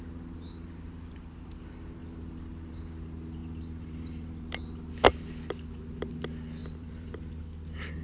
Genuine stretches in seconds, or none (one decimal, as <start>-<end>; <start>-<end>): 0.0-3.4; 4.9-6.6; 7.4-8.0